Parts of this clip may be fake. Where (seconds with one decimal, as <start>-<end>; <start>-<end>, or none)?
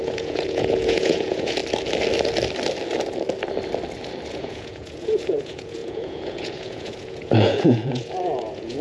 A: 0.0-1.6; 4.3-8.8